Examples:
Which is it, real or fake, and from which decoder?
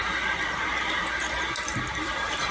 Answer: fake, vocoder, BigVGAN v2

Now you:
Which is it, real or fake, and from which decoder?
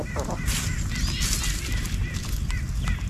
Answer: real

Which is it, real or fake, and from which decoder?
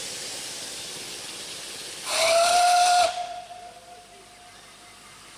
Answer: real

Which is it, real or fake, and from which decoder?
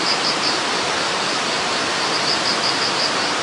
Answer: fake, vocoder, BigVGAN v2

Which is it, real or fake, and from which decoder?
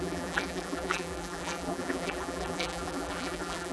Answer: fake, vocoder, BigVGAN v2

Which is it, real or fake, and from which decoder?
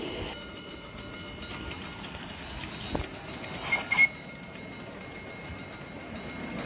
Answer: real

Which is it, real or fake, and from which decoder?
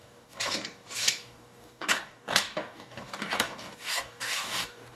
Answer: fake, codec, DAC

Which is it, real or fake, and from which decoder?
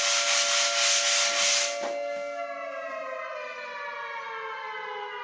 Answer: real